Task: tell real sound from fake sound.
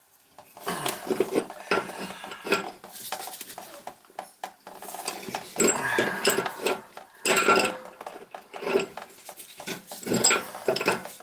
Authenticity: real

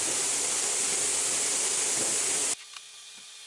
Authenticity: real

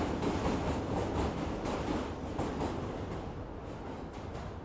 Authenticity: real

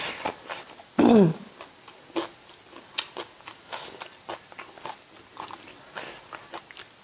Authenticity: real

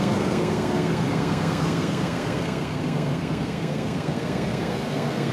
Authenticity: fake